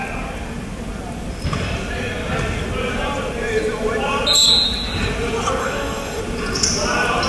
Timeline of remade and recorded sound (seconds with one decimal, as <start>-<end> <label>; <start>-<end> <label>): 0.0-5.6 recorded; 5.6-6.2 remade; 6.2-7.3 recorded